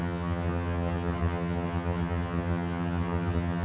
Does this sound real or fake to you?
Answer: fake